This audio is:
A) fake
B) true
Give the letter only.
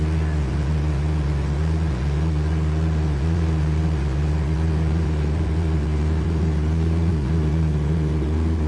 A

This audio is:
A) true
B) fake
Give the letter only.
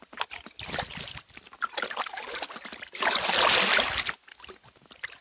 A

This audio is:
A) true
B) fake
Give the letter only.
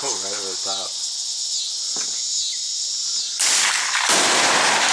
A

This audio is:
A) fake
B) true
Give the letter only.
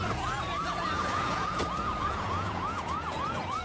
A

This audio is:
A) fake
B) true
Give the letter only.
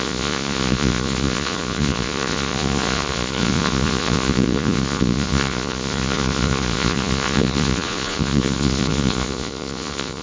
A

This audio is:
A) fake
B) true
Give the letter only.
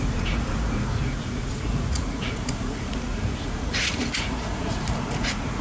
A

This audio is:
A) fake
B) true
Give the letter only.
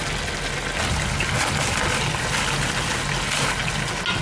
B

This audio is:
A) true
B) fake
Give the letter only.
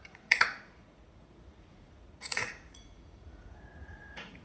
B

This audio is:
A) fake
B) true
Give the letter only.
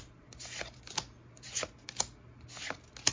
B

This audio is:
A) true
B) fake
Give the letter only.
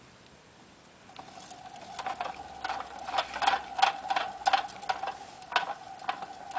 A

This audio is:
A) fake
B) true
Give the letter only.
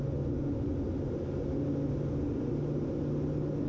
B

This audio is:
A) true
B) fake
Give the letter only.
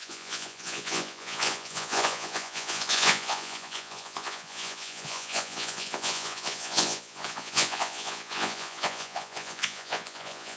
B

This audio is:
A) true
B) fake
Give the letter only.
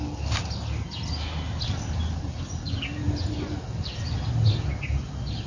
A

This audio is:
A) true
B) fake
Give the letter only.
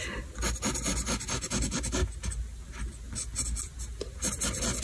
A